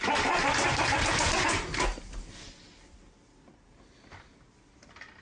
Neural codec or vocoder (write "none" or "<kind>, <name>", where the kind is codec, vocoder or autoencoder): none